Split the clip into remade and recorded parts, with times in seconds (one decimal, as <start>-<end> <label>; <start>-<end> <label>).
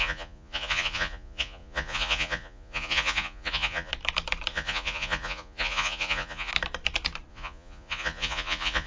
0.0-3.9 remade; 3.9-4.5 recorded; 4.5-6.5 remade; 6.5-7.3 recorded; 7.3-8.9 remade